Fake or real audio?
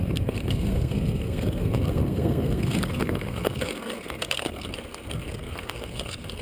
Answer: fake